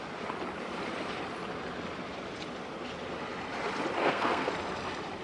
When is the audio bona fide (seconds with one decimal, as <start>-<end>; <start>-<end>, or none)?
0.0-4.0; 4.5-5.2